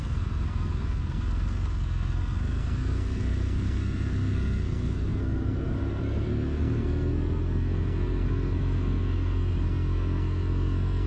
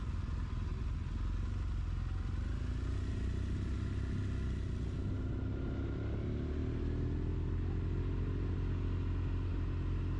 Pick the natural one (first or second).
second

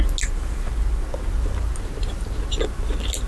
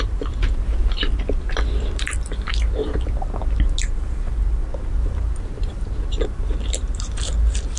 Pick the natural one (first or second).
first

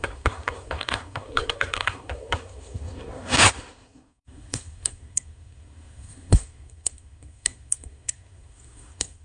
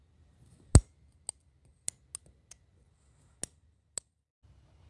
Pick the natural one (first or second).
second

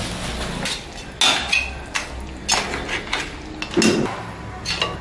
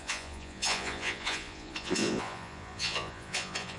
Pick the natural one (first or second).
first